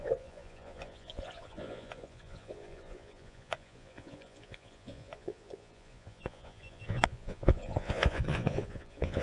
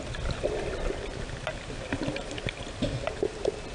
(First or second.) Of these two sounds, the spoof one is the first